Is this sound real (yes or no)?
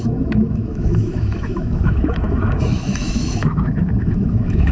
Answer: no